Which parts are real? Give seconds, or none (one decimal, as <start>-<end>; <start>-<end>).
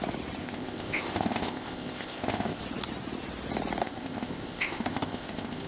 0.0-0.4; 2.6-3.8